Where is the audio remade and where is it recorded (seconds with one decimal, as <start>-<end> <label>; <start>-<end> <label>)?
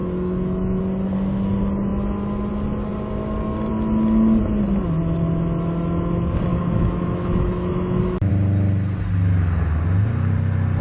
0.0-0.8 remade; 0.8-6.5 recorded; 6.5-8.3 remade; 8.3-10.8 recorded